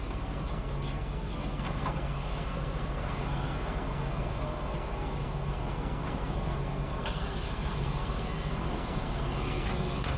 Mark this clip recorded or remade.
remade